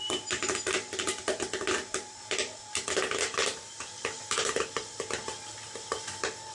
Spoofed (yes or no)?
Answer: no